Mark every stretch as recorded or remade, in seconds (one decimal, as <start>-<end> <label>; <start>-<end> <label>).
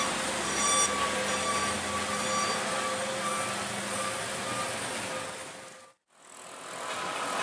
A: 0.0-7.4 recorded